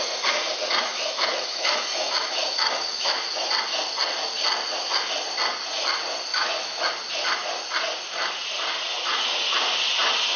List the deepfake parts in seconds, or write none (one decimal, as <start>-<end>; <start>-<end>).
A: 0.9-3.4; 6.3-6.9